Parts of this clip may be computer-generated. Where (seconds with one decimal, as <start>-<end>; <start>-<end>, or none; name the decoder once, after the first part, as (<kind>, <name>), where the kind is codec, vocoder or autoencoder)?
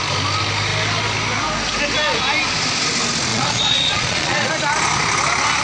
3.3-4.5 (vocoder, Vocos)